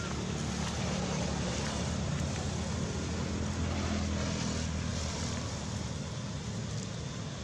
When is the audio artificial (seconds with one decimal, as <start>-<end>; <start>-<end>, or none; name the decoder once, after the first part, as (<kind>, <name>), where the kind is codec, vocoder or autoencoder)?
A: none